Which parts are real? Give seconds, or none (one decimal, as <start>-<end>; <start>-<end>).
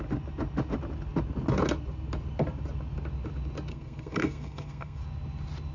0.0-3.7; 5.0-5.7